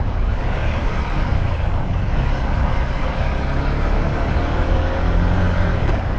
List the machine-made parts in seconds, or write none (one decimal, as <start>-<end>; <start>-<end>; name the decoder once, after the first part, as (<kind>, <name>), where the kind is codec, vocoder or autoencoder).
0.0-6.2 (codec, DAC)